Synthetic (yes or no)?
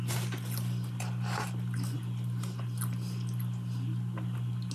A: no